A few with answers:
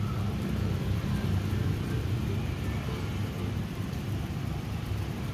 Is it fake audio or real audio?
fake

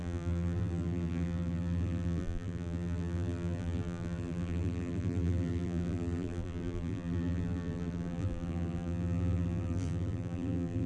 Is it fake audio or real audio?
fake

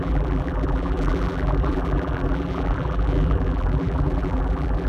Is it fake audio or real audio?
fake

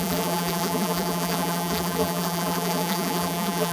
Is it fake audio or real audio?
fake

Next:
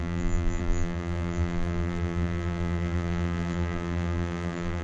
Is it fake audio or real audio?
fake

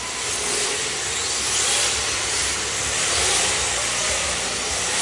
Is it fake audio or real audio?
real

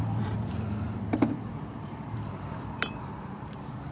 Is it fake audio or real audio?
fake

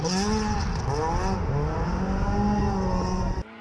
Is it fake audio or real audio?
real